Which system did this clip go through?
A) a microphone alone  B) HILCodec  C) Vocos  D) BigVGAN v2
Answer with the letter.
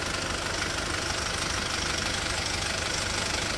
A